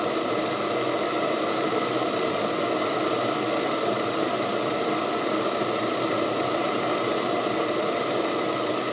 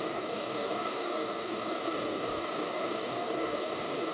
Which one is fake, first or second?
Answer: second